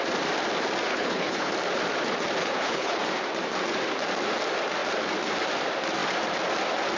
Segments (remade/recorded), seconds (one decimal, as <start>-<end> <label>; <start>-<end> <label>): 0.0-0.9 recorded; 0.9-1.5 remade; 1.5-2.4 recorded; 2.4-3.0 remade; 3.0-7.0 recorded